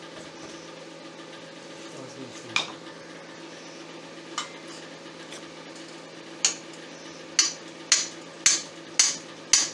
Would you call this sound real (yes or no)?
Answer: yes